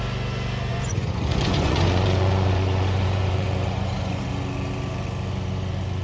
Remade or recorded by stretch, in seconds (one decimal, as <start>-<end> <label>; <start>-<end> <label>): 0.0-0.7 recorded; 0.7-4.3 remade; 4.3-6.0 recorded